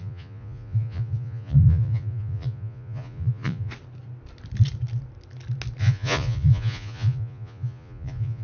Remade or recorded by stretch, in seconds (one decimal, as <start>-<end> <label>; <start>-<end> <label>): 0.0-3.7 remade; 3.7-5.8 recorded; 5.8-8.4 remade